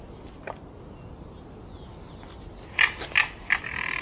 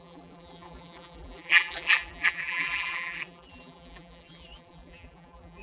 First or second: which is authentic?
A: first